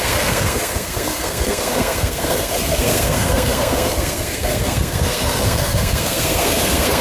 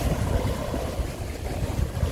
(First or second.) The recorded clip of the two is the second